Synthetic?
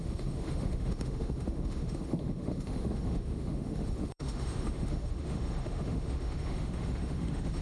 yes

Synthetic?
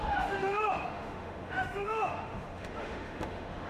yes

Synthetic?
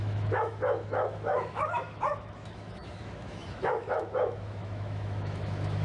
yes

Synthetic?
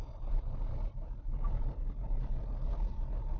no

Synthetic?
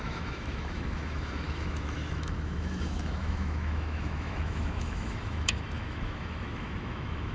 yes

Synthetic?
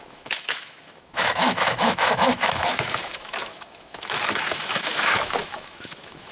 yes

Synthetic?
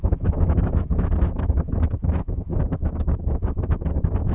yes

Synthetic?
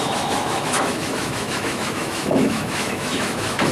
yes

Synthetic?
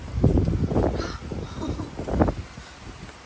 no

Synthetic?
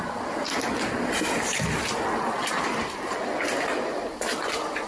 no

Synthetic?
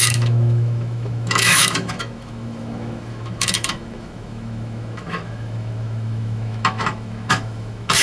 yes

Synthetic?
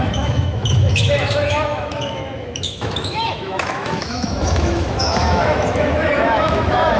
yes